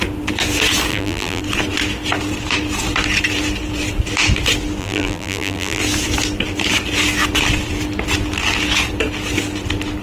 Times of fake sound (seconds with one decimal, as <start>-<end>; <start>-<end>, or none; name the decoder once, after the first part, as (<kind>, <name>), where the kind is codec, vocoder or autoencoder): 0.9-1.4 (vocoder, BigVGAN v2); 4.8-5.8